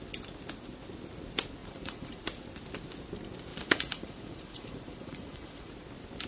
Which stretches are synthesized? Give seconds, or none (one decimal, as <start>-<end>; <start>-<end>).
1.6-2.2; 3.5-5.7